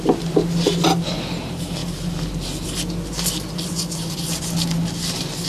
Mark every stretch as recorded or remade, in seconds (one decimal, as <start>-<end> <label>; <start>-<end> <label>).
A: 0.0-5.5 recorded